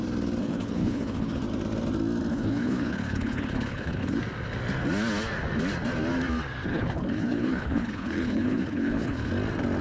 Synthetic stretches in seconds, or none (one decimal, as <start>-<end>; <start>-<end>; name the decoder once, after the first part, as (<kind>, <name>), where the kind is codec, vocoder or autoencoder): 0.4-1.4 (codec, HILCodec); 2.3-4.2; 6.7-9.3